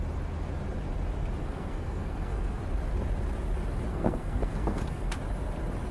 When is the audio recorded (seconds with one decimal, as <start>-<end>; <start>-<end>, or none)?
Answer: 0.0-1.4; 2.6-3.9; 5.2-5.9